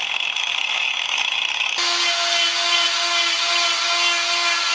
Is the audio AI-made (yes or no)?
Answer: no